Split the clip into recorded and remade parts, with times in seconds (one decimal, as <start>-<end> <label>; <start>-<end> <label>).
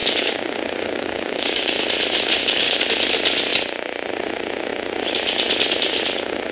0.0-1.8 remade; 1.8-2.4 recorded; 2.4-2.9 remade; 2.9-6.5 recorded